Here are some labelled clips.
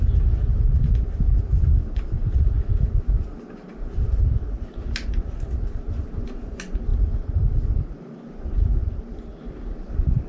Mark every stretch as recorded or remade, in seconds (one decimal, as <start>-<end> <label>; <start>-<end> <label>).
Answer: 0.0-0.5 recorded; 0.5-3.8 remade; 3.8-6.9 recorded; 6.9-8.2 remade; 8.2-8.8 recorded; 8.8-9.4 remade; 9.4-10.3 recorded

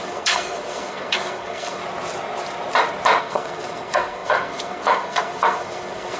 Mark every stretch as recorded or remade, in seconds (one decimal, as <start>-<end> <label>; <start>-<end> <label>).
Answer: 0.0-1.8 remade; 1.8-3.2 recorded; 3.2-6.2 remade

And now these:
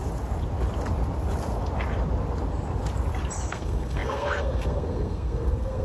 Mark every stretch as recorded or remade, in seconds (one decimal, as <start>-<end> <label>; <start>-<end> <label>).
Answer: 0.0-3.5 recorded; 3.5-5.8 remade

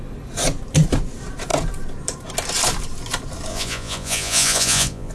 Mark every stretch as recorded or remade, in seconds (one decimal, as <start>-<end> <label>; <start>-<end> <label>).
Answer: 0.0-3.5 recorded; 3.5-5.1 remade